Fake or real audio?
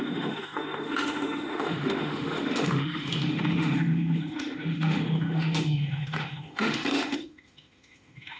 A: fake